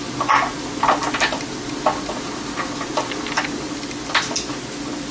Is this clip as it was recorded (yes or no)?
yes